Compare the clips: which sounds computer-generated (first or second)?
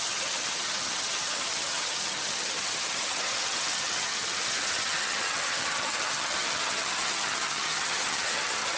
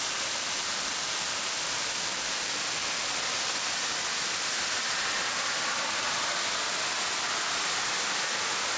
first